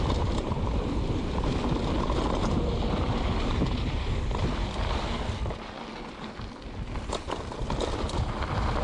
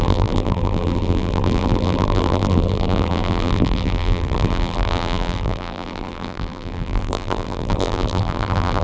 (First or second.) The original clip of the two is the first